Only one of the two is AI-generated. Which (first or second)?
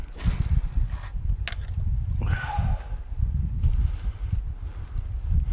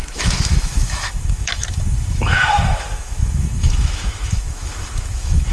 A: second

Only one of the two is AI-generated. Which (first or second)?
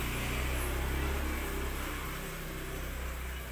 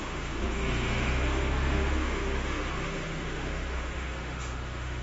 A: second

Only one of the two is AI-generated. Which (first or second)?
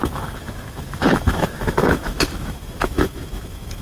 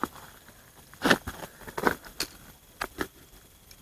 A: first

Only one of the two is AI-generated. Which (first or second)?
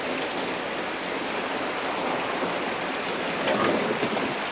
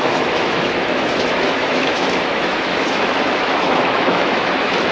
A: second